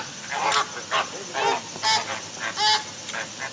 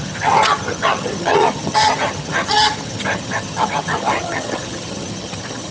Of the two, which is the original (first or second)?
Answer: first